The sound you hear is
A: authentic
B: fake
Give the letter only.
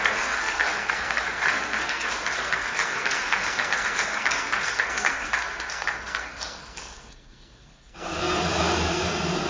B